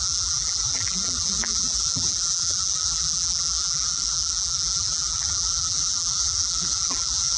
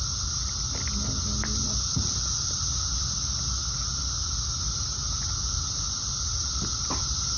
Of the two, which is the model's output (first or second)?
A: first